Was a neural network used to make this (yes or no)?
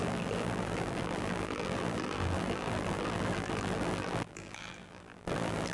yes